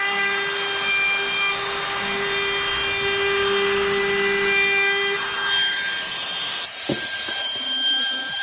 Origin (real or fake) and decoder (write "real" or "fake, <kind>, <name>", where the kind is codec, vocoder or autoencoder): real